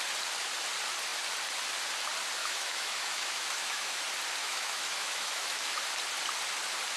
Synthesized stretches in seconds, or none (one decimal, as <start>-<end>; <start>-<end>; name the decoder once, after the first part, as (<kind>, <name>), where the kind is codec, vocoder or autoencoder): 2.4-4.0 (autoencoder, DAC-VAE); 4.4-5.8